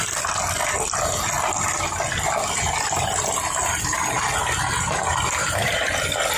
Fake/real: real